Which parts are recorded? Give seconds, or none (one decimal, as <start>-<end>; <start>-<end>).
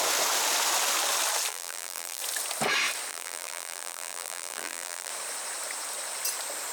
0.0-1.5; 2.2-3.1; 5.1-6.7